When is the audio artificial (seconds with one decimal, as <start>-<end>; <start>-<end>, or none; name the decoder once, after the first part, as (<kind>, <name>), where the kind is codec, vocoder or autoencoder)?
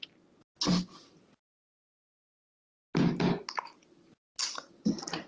none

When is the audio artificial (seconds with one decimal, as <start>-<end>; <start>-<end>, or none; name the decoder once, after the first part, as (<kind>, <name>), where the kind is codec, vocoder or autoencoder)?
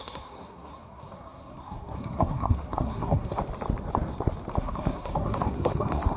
0.0-3.4 (codec, SNAC); 4.6-6.2